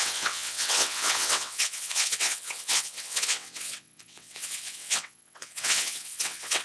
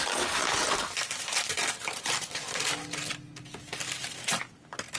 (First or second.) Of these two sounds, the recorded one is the second